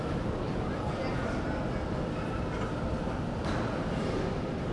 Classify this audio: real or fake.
real